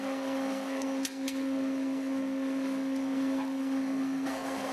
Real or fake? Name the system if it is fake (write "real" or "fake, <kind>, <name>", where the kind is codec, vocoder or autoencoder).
fake, codec, SNAC